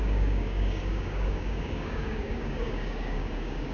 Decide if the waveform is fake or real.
fake